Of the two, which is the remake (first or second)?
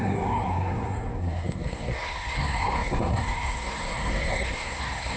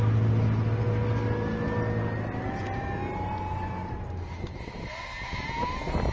first